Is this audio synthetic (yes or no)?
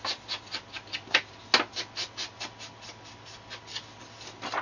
no